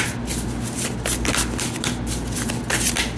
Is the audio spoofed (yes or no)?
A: no